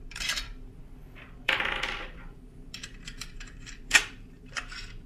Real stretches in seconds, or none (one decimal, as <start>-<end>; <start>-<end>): none